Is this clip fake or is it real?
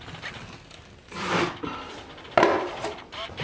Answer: real